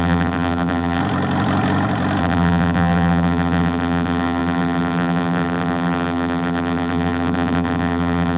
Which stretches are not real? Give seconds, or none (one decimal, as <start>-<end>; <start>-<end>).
0.0-1.0; 2.2-8.4